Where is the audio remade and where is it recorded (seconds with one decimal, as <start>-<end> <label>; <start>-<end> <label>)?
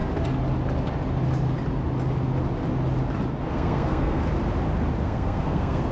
0.0-3.5 recorded; 3.5-4.2 remade; 4.2-5.0 recorded; 5.0-5.9 remade